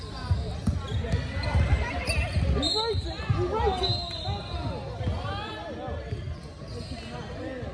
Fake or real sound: real